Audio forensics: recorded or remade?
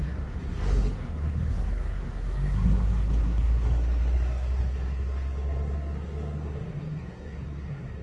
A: remade